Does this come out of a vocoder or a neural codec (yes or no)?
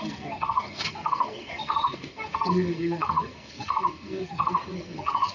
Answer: yes